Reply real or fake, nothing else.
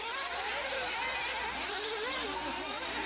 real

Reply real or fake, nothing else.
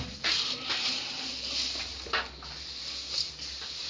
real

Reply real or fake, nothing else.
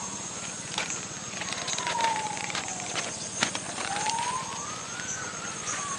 fake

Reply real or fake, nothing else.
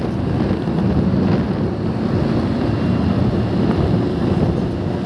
real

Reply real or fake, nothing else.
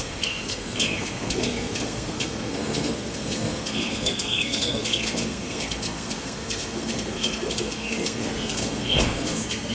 fake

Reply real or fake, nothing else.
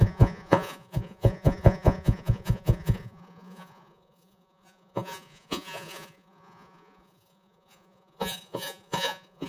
fake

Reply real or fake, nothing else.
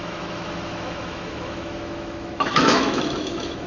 fake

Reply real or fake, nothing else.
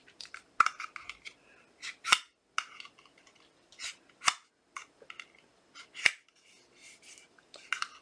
real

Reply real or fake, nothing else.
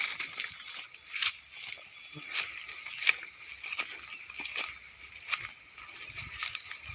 real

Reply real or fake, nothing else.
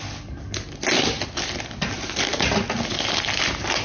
real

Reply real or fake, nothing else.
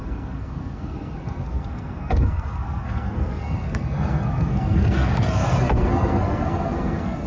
fake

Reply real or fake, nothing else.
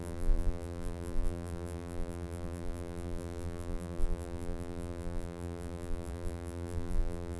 fake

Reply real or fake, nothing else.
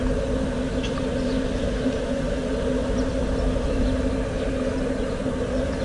real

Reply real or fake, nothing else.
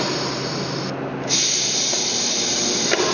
real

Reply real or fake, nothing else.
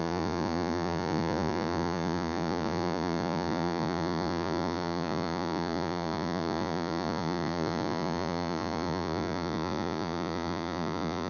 fake